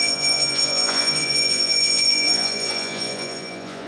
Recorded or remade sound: remade